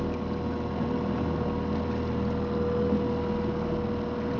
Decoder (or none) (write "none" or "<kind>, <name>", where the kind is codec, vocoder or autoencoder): none